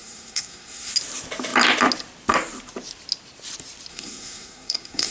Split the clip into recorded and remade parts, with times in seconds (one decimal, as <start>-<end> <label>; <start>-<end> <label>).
0.0-0.9 remade; 0.9-3.9 recorded; 3.9-5.1 remade